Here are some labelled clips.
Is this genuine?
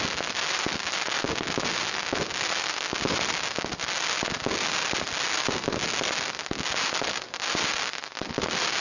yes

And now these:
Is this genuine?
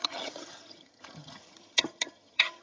no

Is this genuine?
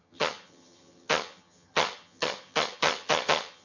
no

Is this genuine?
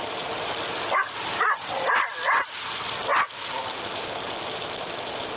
yes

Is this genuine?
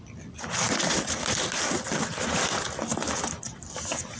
yes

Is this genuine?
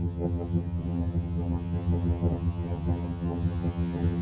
no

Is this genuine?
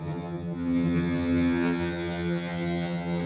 no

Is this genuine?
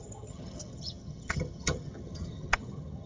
no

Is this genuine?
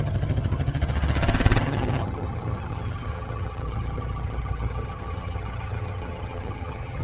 no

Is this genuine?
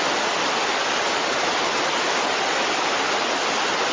yes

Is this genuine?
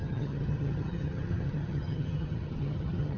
no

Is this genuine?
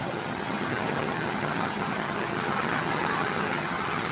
no